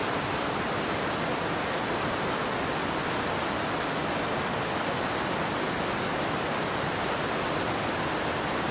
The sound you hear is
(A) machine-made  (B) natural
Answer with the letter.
B